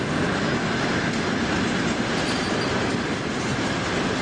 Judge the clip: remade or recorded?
recorded